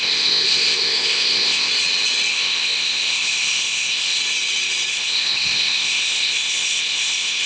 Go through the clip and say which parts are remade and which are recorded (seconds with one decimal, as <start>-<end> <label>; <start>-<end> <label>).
0.0-1.7 remade; 1.7-2.3 recorded; 2.3-4.2 remade; 4.2-4.9 recorded; 4.9-7.5 remade